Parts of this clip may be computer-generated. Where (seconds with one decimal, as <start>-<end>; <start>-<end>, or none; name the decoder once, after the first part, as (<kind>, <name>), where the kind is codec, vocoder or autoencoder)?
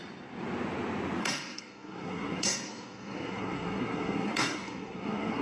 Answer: 1.2-5.4 (codec, SNAC)